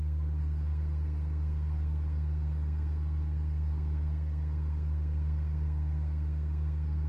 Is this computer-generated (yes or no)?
yes